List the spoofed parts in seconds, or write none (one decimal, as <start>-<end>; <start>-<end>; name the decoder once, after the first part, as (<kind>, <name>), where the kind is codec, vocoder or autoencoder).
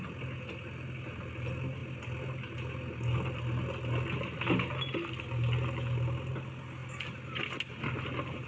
none